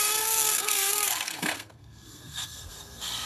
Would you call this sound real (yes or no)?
no